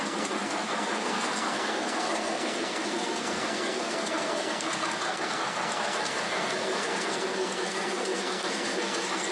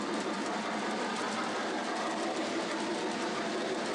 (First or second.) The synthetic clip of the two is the first